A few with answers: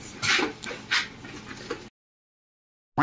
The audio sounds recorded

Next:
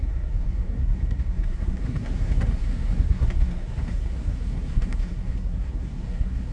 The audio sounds remade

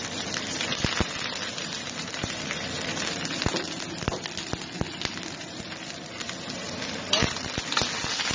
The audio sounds recorded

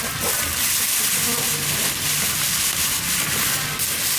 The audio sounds recorded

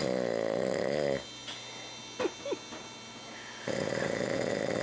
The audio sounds recorded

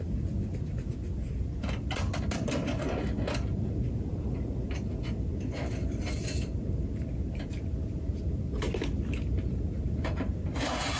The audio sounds recorded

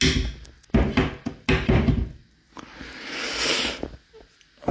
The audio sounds recorded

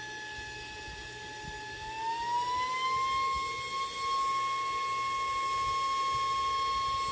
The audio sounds recorded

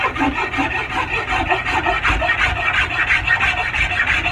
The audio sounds recorded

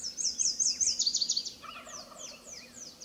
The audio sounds recorded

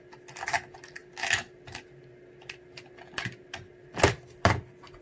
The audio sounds recorded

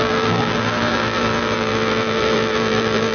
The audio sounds remade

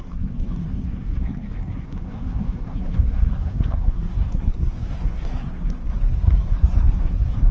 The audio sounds remade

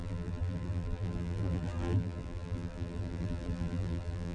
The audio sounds remade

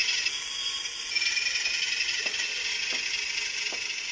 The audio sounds recorded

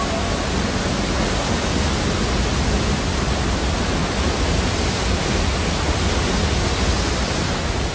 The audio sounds recorded